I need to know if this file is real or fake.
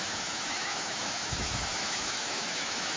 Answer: fake